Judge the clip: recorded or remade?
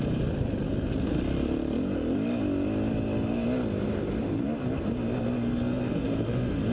recorded